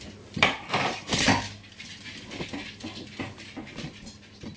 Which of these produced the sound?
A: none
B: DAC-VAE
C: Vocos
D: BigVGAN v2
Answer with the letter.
A